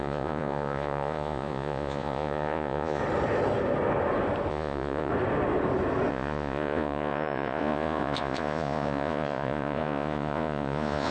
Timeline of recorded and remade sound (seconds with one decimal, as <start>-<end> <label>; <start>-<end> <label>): 0.0-3.0 remade; 3.0-4.5 recorded; 4.5-5.1 remade; 5.1-6.1 recorded; 6.1-11.1 remade